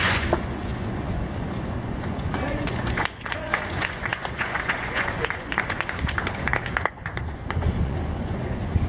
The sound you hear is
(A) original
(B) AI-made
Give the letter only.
B